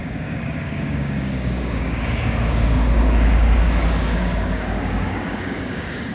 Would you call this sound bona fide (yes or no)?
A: no